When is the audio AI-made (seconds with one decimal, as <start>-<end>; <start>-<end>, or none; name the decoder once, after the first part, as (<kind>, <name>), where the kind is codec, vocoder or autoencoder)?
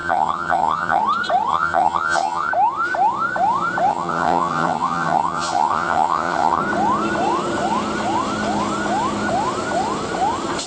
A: 0.0-1.0 (vocoder, HiFi-GAN); 1.5-2.5; 3.9-6.6